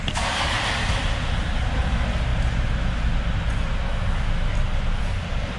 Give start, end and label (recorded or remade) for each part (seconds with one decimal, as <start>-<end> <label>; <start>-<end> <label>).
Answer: 0.0-2.3 remade; 2.3-5.0 recorded; 5.0-5.6 remade